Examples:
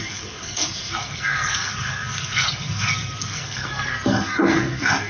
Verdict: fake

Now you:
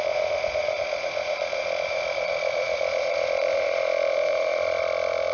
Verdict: fake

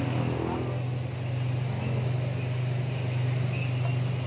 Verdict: real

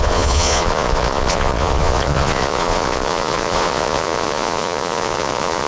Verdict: fake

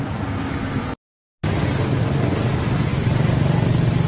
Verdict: real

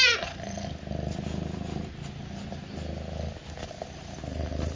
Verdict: real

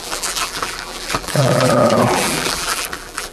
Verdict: fake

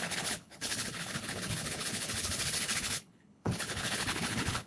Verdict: fake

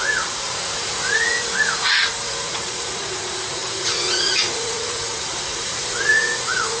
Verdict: fake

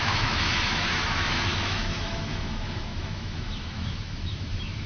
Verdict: fake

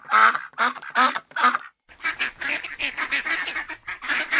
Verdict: fake